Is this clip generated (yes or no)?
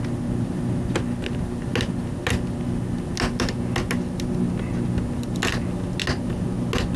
no